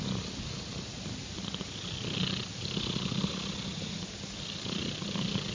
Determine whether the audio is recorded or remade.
recorded